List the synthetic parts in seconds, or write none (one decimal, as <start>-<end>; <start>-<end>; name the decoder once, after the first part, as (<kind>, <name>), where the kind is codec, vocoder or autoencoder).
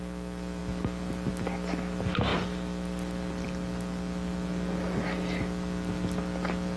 none